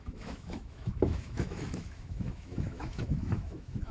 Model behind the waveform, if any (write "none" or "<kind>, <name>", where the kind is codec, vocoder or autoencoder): autoencoder, DAC-VAE